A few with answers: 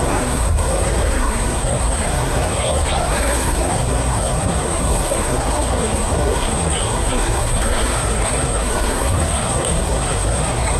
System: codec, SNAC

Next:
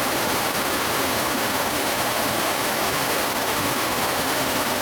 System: autoencoder, DAC-VAE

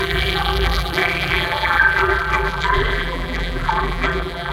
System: vocoder, BigVGAN v2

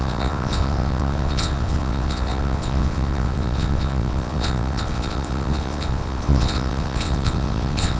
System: vocoder, WaveNeXt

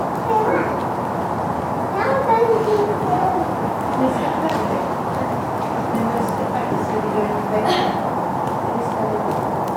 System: none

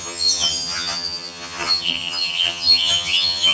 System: vocoder, HiFi-GAN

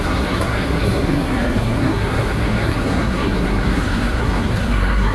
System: codec, SNAC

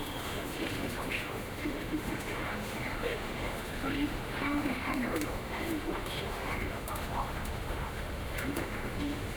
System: autoencoder, DAC-VAE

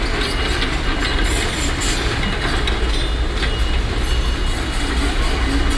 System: none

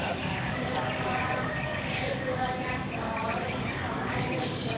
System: codec, DAC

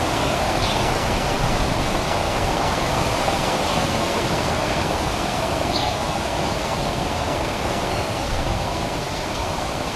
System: codec, SNAC